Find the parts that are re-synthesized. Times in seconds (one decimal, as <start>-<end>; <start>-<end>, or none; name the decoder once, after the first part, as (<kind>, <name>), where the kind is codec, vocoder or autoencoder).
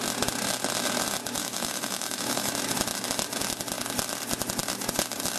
1.4-2.5 (autoencoder, DAC-VAE)